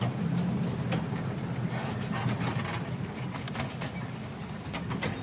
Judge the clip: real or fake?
real